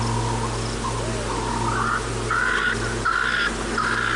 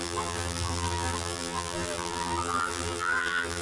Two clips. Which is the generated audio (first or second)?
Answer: second